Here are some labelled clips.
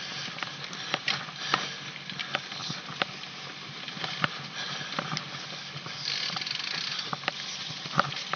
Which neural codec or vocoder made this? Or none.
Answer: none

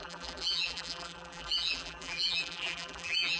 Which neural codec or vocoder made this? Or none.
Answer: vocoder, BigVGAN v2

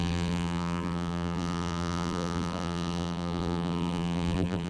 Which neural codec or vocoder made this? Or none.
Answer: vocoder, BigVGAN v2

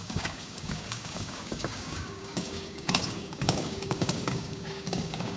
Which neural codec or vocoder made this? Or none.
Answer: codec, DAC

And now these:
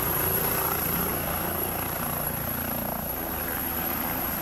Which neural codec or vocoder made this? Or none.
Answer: none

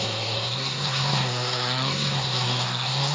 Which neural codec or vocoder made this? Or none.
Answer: codec, SNAC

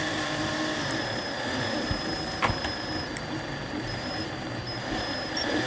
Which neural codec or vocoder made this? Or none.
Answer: vocoder, BigVGAN v2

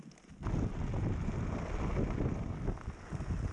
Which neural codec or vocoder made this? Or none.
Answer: none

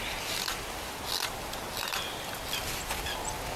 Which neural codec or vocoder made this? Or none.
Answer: none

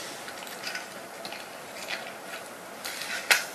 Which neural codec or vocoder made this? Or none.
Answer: none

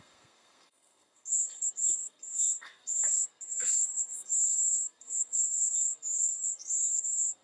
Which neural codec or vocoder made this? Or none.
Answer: codec, SNAC